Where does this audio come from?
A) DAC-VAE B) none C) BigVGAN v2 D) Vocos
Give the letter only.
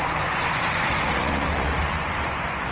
D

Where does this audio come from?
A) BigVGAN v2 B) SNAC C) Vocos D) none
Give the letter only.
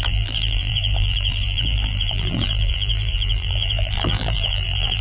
A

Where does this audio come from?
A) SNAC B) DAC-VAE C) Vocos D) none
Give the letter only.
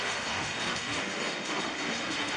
B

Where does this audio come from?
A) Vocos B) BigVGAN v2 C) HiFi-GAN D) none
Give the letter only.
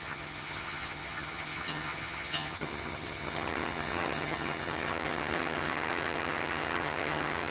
C